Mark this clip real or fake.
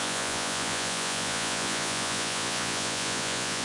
fake